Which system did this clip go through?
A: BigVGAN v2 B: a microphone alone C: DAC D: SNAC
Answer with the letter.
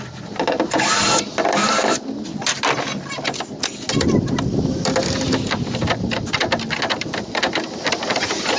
B